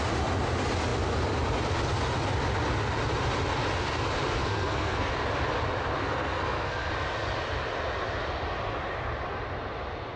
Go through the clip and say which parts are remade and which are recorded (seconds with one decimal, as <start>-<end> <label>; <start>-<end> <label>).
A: 0.0-4.4 recorded; 4.4-5.1 remade; 5.1-6.0 recorded; 6.0-6.9 remade; 6.9-10.2 recorded